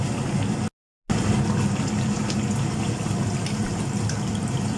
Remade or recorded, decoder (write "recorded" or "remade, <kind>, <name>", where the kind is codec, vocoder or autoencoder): recorded